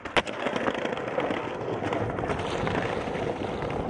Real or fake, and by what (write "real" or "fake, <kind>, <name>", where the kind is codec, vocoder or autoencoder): real